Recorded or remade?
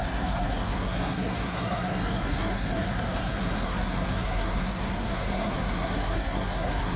remade